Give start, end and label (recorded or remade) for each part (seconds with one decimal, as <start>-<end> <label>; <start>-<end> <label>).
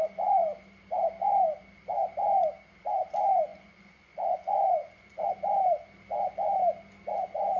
0.0-3.5 recorded; 3.5-5.3 remade; 5.3-7.6 recorded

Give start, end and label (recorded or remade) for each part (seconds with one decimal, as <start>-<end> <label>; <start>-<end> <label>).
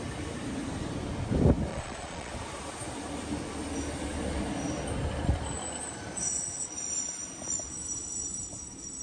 0.0-1.7 recorded; 1.7-2.3 remade; 2.3-9.0 recorded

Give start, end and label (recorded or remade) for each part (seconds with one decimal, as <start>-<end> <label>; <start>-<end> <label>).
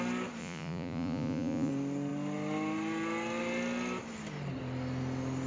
0.0-0.4 recorded; 0.4-1.7 remade; 1.7-5.5 recorded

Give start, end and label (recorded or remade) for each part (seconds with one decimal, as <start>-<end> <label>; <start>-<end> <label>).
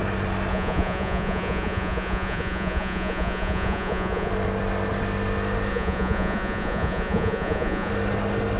0.0-0.5 recorded; 0.5-4.3 remade; 4.3-5.7 recorded; 5.7-7.9 remade; 7.9-8.6 recorded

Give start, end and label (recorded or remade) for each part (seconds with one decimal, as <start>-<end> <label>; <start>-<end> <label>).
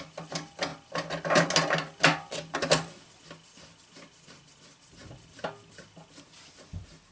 0.0-7.1 recorded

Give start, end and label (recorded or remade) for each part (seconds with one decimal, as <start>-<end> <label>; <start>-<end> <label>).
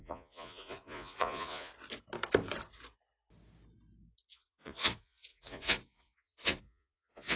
0.0-1.7 remade; 1.7-4.3 recorded; 4.3-7.4 remade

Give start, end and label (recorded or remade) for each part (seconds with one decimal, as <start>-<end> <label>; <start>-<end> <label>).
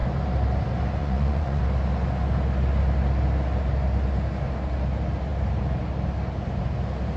0.0-1.0 recorded; 1.0-1.6 remade; 1.6-7.2 recorded